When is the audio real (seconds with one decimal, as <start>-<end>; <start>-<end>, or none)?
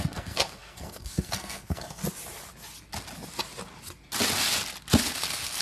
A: 2.0-5.6